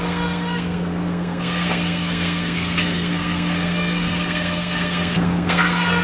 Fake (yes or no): yes